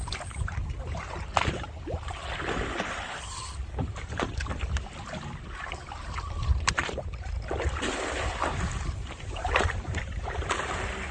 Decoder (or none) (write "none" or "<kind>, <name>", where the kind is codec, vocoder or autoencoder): none